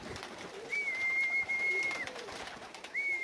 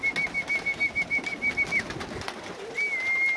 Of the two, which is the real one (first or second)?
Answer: second